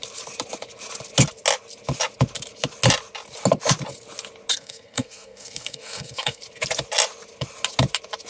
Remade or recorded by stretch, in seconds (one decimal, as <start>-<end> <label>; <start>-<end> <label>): 0.0-4.5 recorded; 4.5-6.4 remade; 6.4-8.3 recorded